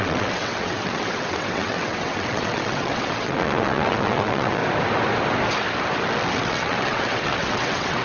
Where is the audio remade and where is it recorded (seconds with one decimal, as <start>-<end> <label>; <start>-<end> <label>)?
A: 0.0-4.6 remade; 4.6-6.3 recorded; 6.3-8.0 remade